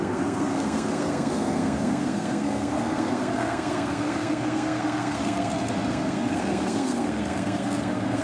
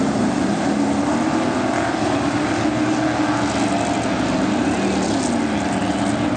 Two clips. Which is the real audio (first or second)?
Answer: second